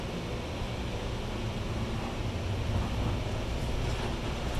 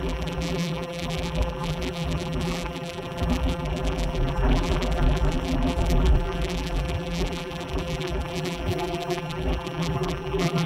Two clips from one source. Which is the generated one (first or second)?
second